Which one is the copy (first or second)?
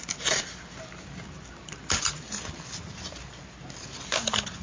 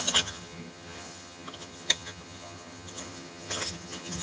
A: second